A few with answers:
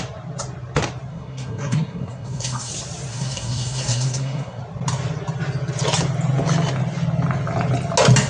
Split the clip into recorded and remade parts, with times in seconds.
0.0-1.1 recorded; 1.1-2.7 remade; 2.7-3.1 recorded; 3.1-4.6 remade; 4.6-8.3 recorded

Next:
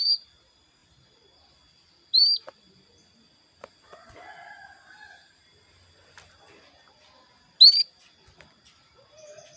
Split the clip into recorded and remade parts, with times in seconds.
0.0-9.6 recorded

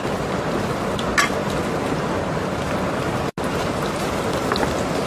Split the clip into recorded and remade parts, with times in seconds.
0.0-5.1 recorded

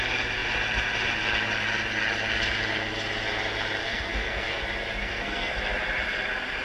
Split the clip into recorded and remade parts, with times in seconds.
0.0-3.8 recorded; 3.8-4.6 remade; 4.6-5.0 recorded; 5.0-5.6 remade; 5.6-6.6 recorded

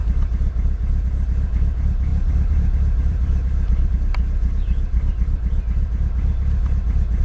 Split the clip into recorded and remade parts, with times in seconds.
0.0-2.1 recorded; 2.1-3.9 remade; 3.9-7.2 recorded

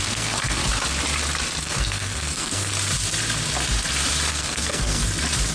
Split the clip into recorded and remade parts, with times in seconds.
0.0-0.6 remade; 0.6-1.6 recorded; 1.6-2.7 remade; 2.7-4.3 recorded; 4.3-5.0 remade; 5.0-5.5 recorded